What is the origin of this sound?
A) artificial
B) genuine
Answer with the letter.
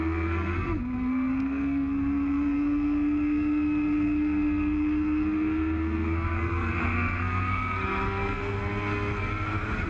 A